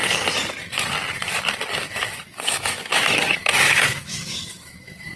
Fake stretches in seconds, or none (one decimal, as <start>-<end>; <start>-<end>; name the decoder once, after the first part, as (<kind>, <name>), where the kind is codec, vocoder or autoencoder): 1.9-5.2 (autoencoder, DAC-VAE)